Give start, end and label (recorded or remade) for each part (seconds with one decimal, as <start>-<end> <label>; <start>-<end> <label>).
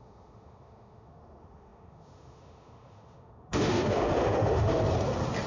0.0-4.8 remade; 4.8-5.5 recorded